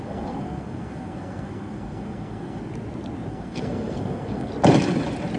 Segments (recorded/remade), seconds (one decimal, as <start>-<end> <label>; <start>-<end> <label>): 0.0-2.6 remade; 2.6-3.3 recorded; 3.3-4.5 remade; 4.5-5.4 recorded